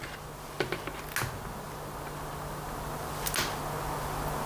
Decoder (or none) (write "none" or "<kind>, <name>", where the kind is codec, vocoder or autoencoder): none